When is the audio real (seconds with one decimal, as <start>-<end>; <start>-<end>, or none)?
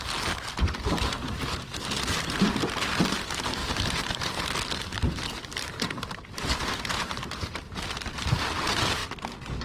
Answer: 0.0-3.6; 4.3-5.5; 8.4-9.6